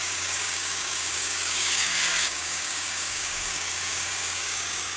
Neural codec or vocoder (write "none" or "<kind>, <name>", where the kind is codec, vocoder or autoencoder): codec, DAC